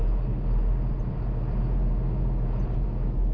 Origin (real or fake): real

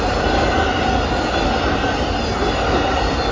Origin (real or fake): real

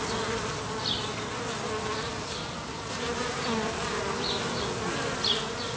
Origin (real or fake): real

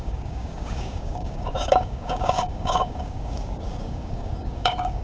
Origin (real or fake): fake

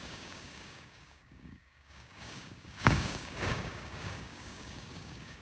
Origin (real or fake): fake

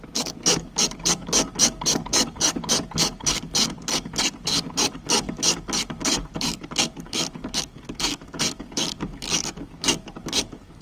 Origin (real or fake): fake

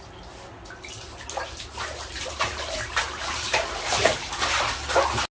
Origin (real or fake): real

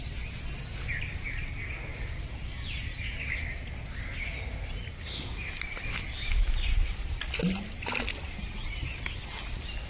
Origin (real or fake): real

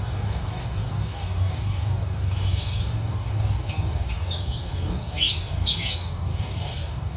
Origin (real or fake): fake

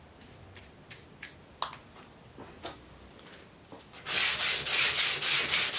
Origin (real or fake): real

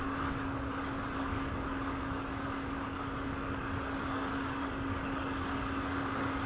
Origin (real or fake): fake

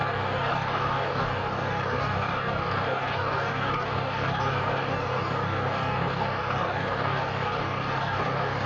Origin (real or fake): fake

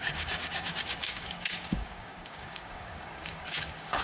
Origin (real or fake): fake